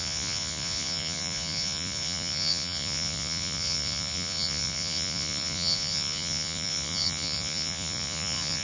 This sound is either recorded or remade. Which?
remade